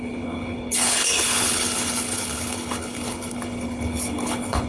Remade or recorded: remade